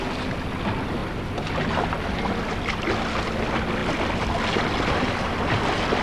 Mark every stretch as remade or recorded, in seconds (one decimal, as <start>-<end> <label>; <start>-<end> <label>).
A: 0.0-1.0 recorded; 1.0-2.9 remade; 2.9-6.0 recorded